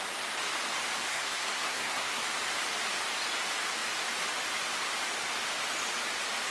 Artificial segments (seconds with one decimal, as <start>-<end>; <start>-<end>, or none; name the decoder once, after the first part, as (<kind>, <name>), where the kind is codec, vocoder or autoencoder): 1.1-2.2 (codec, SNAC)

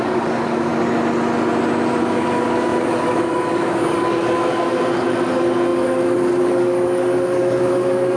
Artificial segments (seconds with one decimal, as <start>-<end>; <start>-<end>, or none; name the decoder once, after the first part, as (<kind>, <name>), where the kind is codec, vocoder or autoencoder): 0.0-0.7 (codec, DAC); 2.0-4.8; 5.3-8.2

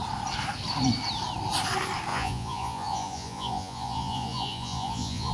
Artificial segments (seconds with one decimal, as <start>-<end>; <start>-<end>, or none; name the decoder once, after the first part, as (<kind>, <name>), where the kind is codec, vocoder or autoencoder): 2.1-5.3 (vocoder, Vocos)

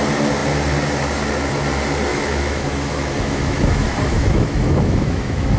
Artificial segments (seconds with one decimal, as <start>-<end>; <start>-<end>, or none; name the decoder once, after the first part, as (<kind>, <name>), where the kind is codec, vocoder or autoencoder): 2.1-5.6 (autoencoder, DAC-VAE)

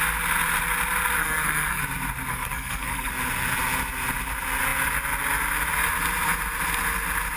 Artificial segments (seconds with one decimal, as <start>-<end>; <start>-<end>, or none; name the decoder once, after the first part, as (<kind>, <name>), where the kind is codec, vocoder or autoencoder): 1.2-1.8 (codec, SNAC); 2.3-3.1